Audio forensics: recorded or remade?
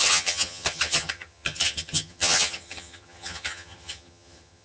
remade